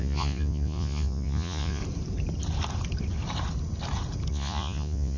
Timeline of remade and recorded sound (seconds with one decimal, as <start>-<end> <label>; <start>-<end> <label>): 0.0-1.8 remade; 1.8-4.3 recorded; 4.3-5.2 remade